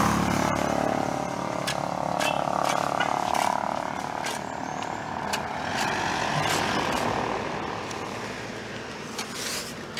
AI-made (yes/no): no